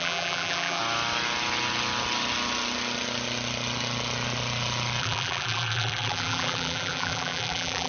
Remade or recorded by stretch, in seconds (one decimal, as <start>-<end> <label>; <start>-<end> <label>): 0.0-0.8 remade; 0.8-5.0 recorded; 5.0-7.9 remade